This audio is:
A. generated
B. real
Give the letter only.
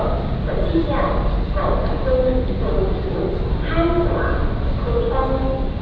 B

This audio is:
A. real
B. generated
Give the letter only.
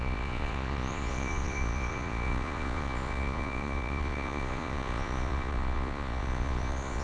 B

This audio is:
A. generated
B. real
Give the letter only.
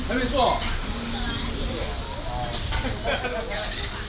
B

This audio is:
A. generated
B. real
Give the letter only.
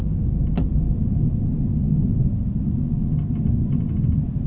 B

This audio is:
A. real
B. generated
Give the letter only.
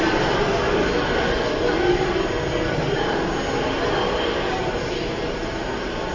A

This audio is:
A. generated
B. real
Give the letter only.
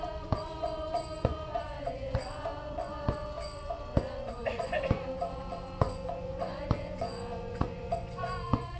A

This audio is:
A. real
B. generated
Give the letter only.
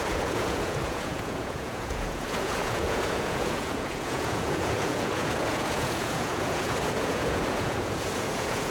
B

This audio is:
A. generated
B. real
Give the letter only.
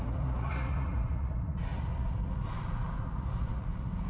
A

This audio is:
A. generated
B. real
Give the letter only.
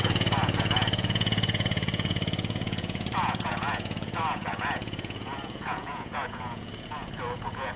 A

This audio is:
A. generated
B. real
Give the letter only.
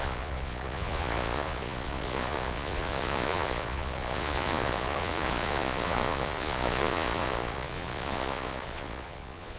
A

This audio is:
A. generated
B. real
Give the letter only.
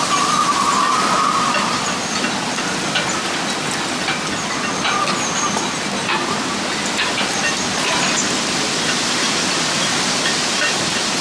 B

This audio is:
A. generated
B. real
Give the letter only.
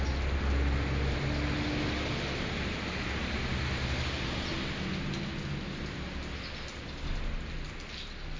B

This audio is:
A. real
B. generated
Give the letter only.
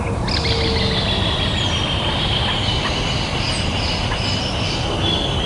A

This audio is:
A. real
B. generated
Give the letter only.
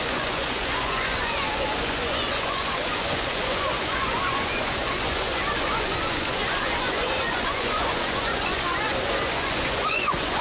B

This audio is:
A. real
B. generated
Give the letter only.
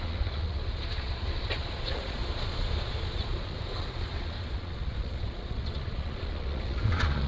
B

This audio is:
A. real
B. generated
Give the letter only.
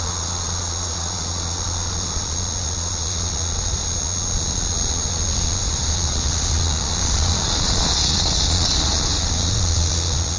B